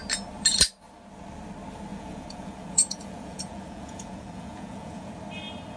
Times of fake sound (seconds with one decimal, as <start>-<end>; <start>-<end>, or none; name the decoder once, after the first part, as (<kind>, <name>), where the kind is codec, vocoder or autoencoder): 1.9-5.1 (vocoder, Vocos)